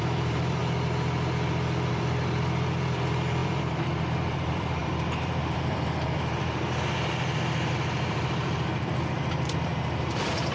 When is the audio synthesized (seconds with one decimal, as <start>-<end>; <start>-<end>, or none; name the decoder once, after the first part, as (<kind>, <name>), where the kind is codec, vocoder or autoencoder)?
0.0-0.6 (vocoder, BigVGAN v2); 1.9-9.7